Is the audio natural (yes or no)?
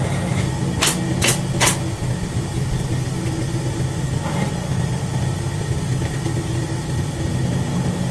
yes